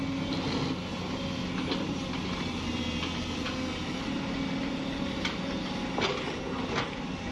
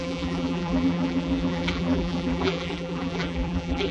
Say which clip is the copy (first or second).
second